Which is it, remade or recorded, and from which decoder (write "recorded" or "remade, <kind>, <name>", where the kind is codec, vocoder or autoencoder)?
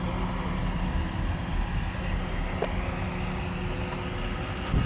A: recorded